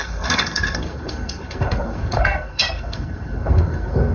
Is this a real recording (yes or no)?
no